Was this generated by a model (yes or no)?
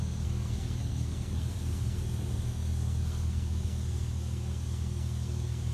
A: yes